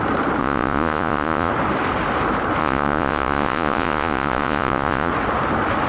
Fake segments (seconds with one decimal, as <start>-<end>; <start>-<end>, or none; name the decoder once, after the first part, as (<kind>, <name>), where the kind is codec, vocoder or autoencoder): 0.4-1.5 (vocoder, Vocos); 2.6-5.1